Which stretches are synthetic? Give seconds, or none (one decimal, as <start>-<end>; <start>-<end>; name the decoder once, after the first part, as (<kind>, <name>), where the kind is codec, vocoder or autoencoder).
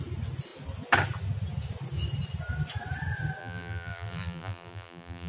3.4-5.3 (vocoder, BigVGAN v2)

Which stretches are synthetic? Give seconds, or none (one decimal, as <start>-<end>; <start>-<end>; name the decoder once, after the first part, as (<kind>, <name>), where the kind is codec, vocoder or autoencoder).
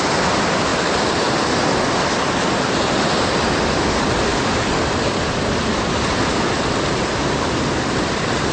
0.0-0.7 (vocoder, BigVGAN v2); 3.3-8.5